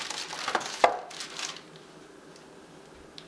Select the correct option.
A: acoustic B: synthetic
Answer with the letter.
A